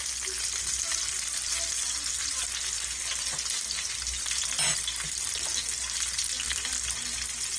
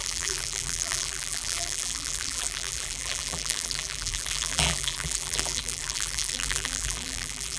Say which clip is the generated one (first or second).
second